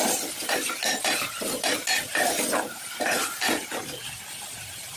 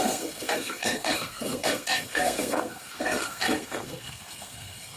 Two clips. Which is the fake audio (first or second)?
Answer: second